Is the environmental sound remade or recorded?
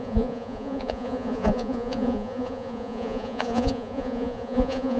remade